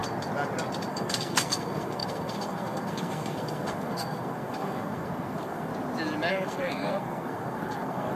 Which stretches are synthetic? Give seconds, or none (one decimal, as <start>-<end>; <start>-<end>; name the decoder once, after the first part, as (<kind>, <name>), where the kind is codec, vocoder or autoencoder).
0.9-5.7 (codec, SNAC); 6.3-8.1